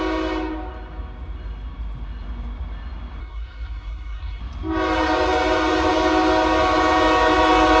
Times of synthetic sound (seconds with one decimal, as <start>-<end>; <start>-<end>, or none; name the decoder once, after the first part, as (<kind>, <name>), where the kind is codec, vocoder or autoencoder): 3.2-4.4 (codec, SNAC)